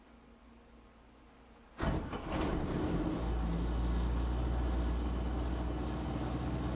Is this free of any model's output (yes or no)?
yes